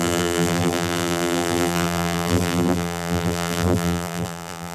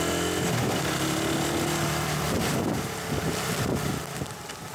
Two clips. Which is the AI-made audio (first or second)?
first